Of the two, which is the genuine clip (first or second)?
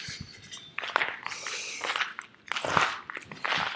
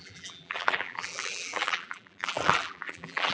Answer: first